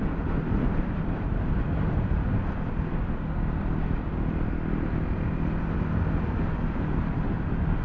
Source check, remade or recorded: recorded